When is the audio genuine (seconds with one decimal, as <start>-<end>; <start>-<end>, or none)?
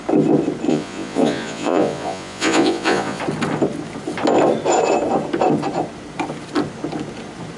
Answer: 0.0-0.7; 3.2-7.6